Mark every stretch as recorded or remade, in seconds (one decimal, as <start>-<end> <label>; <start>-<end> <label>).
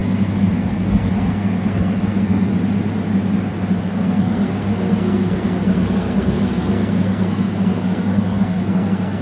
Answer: 0.0-2.5 remade; 2.5-3.8 recorded; 3.8-9.2 remade